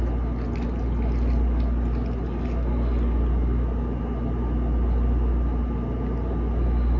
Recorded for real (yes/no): yes